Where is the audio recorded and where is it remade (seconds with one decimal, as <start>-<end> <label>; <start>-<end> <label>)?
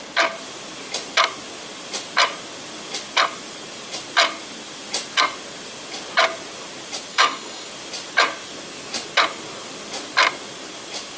0.0-7.1 recorded; 7.1-7.7 remade; 7.7-11.2 recorded